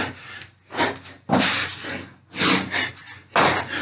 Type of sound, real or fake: real